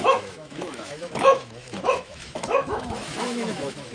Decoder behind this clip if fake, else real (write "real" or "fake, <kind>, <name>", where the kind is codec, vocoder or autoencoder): fake, autoencoder, DAC-VAE